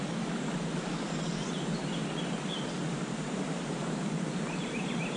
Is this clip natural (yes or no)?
yes